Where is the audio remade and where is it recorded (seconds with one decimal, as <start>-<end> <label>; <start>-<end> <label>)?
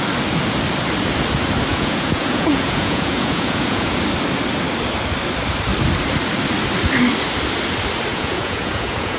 0.0-1.7 recorded; 1.7-4.0 remade; 4.0-8.1 recorded; 8.1-9.2 remade